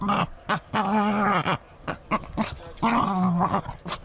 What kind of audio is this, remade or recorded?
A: recorded